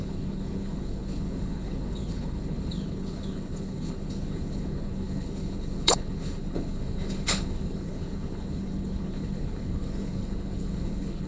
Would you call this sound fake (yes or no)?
yes